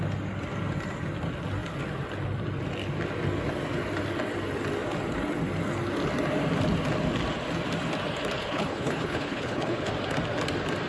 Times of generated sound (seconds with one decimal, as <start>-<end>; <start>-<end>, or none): 8.4-9.9